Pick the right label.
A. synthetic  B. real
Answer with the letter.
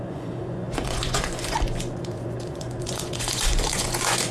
A